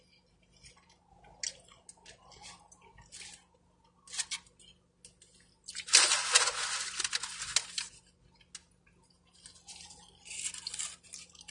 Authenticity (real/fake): real